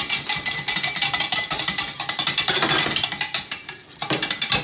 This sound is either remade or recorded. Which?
recorded